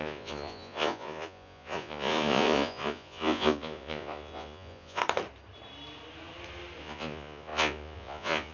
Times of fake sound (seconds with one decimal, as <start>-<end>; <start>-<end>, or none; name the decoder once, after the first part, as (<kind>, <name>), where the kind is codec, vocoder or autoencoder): 0.0-5.0 (vocoder, Vocos); 6.8-8.5